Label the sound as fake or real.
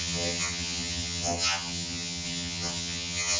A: fake